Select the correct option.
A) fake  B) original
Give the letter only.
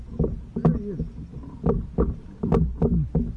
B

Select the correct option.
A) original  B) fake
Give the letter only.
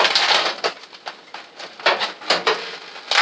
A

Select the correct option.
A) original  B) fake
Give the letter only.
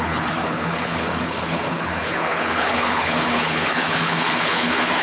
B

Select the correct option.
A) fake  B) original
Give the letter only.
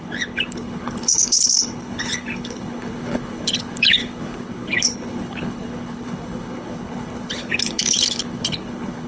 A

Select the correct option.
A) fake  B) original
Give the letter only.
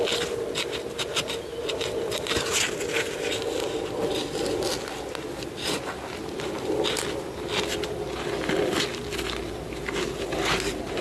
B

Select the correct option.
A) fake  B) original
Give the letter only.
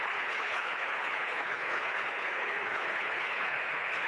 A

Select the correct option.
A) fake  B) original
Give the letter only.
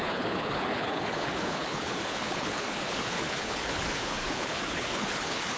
A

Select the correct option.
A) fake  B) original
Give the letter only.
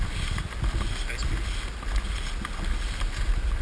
B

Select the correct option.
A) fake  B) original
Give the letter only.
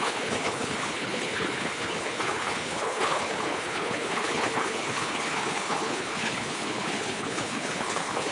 A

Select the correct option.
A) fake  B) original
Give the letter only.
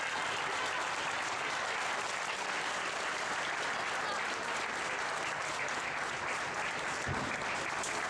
B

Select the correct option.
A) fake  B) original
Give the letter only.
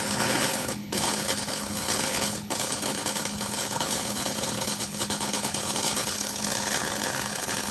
A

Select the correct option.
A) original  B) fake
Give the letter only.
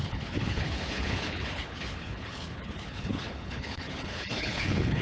B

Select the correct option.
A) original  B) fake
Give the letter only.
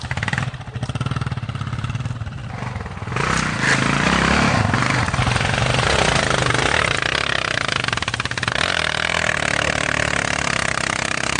A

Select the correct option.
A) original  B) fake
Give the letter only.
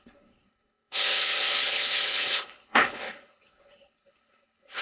B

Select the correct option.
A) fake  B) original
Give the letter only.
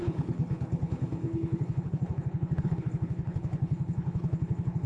A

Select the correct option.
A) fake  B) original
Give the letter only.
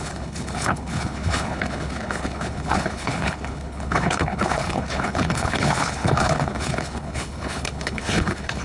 A